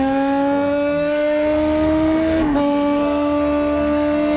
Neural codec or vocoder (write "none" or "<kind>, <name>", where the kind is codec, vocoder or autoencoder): codec, SNAC